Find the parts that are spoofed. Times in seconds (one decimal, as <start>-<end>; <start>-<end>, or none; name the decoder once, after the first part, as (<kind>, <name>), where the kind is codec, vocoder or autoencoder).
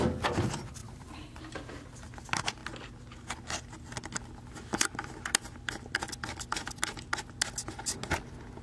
0.8-1.4 (vocoder, BigVGAN v2); 4.7-5.7